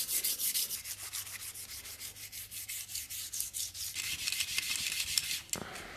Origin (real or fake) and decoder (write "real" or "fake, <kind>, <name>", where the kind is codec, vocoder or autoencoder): real